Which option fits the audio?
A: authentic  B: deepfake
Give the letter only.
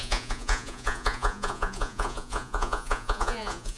B